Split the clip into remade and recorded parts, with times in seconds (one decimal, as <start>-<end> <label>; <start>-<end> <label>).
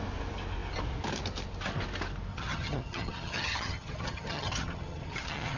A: 0.0-2.3 recorded; 2.3-5.6 remade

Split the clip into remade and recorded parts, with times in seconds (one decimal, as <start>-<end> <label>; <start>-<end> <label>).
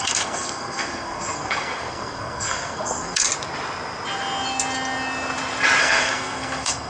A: 0.0-3.3 remade; 3.3-5.8 recorded; 5.8-6.9 remade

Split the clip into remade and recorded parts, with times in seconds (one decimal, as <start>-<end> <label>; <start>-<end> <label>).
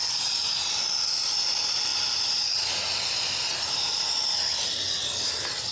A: 0.0-5.7 recorded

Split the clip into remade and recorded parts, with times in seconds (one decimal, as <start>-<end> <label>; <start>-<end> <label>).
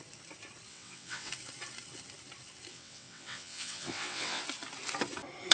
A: 0.0-0.7 recorded; 0.7-1.3 remade; 1.3-2.7 recorded; 2.7-4.4 remade; 4.4-5.5 recorded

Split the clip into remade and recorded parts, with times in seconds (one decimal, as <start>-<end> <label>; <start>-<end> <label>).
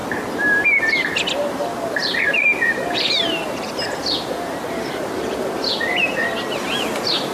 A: 0.0-7.3 recorded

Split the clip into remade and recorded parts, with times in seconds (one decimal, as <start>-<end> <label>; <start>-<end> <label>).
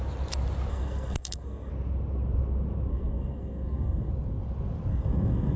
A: 0.0-0.7 recorded; 0.7-1.7 remade; 1.7-2.9 recorded; 2.9-4.1 remade; 4.1-4.9 recorded; 4.9-5.6 remade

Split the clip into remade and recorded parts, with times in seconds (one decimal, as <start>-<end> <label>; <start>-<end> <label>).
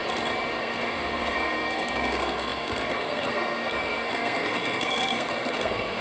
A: 0.0-0.6 recorded; 0.6-6.0 remade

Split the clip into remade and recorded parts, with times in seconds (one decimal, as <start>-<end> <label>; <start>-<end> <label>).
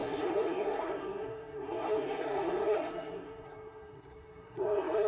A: 0.0-5.1 remade